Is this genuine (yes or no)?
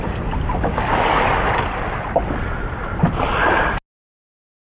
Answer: yes